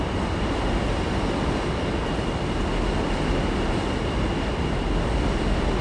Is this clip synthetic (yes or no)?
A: no